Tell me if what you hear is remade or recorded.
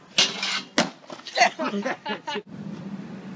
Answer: recorded